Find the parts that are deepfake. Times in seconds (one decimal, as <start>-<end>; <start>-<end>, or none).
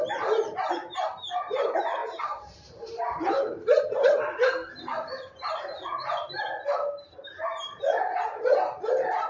0.0-9.3